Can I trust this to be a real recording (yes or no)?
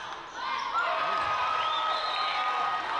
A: yes